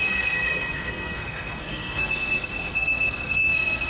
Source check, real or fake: fake